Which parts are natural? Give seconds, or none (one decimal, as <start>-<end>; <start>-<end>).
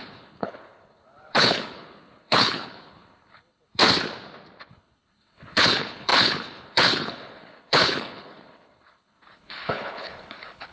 3.8-4.7